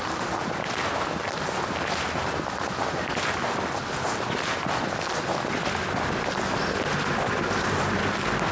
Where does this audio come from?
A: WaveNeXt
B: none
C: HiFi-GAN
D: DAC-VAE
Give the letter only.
B